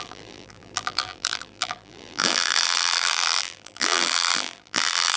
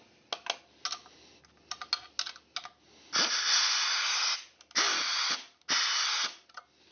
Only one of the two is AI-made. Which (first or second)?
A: first